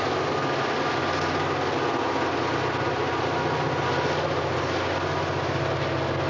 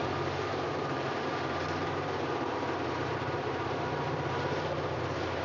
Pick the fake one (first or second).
second